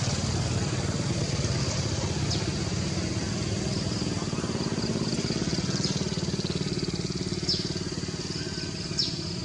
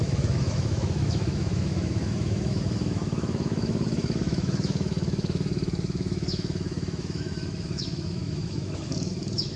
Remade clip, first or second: second